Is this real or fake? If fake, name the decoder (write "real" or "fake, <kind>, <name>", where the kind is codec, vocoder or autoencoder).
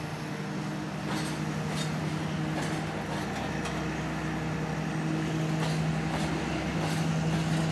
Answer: real